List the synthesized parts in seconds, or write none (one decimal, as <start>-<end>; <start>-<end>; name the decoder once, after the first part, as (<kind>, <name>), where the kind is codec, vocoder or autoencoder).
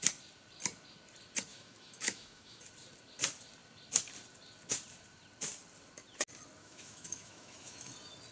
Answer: 1.5-2.6 (autoencoder, DAC-VAE); 6.6-7.9